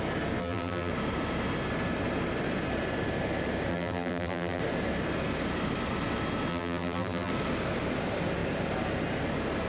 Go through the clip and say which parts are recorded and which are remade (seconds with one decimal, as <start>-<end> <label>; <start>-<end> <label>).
0.0-0.4 recorded; 0.4-0.9 remade; 0.9-3.7 recorded; 3.7-4.6 remade; 4.6-6.5 recorded; 6.5-7.3 remade; 7.3-9.7 recorded